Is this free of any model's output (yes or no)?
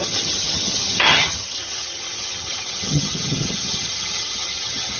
no